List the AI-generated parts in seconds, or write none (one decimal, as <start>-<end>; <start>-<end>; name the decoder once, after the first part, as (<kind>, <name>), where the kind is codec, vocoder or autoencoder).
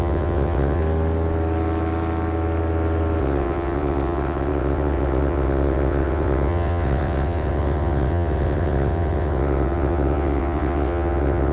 0.0-0.8 (vocoder, WaveNeXt); 3.2-11.5